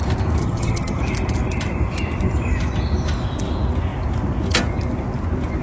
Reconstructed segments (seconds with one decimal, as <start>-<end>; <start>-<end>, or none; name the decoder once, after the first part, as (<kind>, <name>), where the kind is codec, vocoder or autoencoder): 0.4-1.0 (vocoder, HiFi-GAN)